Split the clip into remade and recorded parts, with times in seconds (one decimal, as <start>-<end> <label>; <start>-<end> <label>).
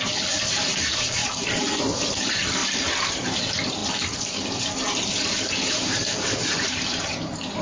0.0-7.6 remade